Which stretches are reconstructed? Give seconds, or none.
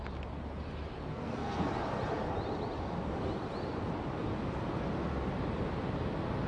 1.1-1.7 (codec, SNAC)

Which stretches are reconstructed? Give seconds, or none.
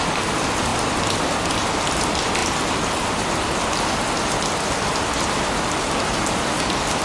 none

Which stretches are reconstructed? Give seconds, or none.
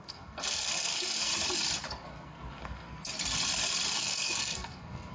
0.0-1.3 (codec, SNAC); 1.9-3.1; 4.0-5.1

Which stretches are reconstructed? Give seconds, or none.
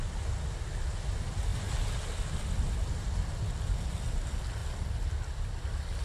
none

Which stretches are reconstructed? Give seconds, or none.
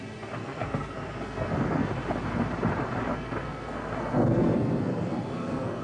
0.4-1.9 (codec, SNAC); 3.1-5.8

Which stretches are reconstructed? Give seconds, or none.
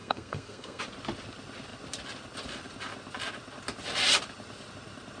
0.0-0.8 (codec, SNAC)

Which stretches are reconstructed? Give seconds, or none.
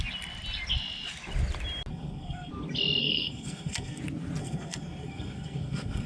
1.9-2.5 (codec, SNAC); 3.0-4.0; 4.4-6.1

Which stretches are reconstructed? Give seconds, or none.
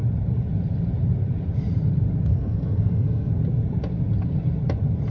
2.3-3.3 (codec, SNAC)